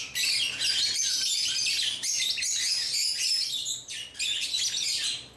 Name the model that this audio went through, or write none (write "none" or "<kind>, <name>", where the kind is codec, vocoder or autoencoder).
none